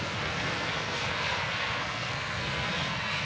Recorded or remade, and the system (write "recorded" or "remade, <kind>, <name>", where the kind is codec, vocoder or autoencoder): remade, codec, SNAC